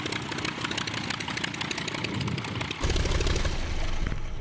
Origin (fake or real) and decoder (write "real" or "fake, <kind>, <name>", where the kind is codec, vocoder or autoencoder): real